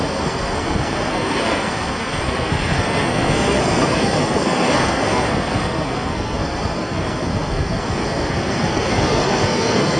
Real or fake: fake